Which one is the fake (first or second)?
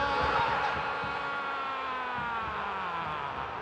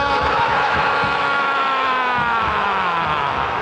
second